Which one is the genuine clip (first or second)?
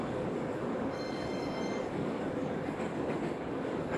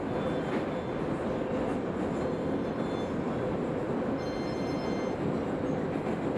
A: second